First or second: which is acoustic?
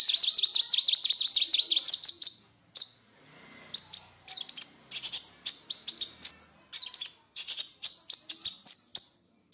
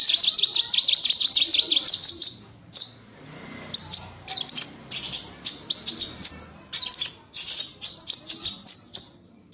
first